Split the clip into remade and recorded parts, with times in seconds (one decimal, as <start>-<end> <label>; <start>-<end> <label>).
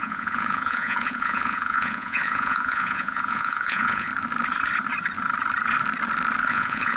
0.0-4.1 remade; 4.1-6.5 recorded; 6.5-7.0 remade